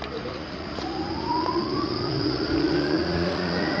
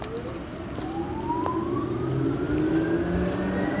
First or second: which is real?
second